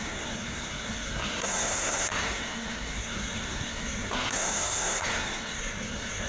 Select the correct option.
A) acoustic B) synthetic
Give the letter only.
B